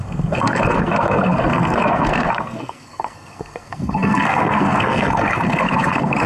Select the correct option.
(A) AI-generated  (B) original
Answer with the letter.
A